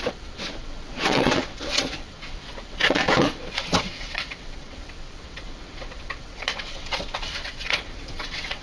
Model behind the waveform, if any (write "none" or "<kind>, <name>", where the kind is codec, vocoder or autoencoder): vocoder, WaveNeXt